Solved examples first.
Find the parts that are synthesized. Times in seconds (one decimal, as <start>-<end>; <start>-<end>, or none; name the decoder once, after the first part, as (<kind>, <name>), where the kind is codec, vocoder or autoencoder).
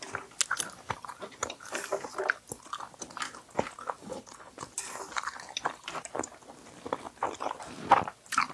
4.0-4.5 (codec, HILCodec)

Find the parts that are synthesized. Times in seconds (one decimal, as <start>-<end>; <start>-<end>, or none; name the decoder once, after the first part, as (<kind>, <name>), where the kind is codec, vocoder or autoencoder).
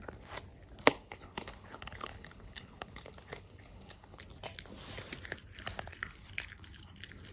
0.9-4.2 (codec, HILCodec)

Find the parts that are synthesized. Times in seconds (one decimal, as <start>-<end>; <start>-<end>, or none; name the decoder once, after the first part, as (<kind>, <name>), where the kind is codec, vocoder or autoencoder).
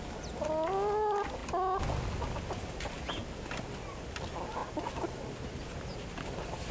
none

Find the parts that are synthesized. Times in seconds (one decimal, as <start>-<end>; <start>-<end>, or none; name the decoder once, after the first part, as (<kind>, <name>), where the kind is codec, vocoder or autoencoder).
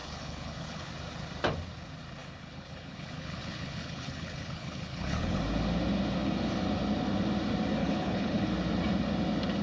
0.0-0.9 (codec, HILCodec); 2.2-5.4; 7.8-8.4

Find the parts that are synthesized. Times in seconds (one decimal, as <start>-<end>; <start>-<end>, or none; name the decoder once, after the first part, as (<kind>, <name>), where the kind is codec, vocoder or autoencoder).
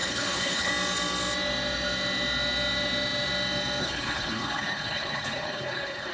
0.0-0.7 (codec, HILCodec); 3.8-6.1